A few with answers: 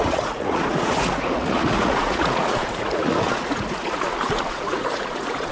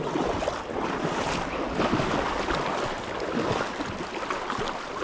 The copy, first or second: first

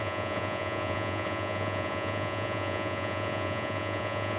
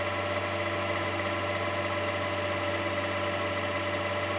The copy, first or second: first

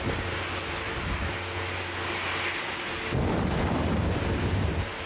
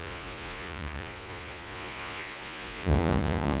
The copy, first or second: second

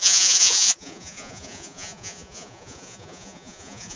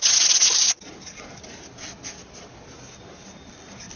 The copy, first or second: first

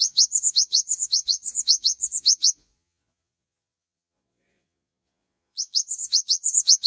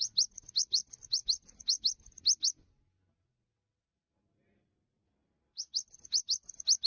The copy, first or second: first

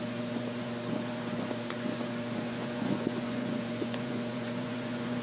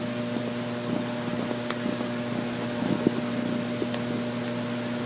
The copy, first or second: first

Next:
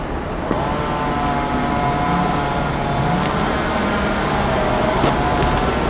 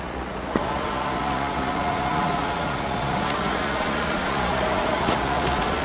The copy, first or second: second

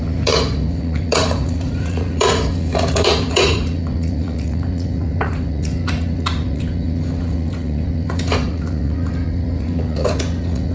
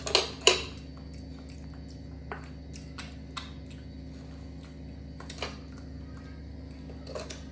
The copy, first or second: first